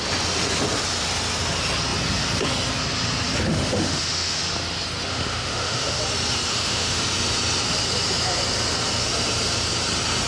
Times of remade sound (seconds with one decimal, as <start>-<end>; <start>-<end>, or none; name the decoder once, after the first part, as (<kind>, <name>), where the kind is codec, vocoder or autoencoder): 3.5-4.4 (autoencoder, DAC-VAE); 5.1-6.0; 6.5-7.0